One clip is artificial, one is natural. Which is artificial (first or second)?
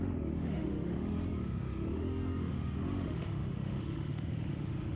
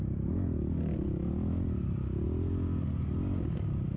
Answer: first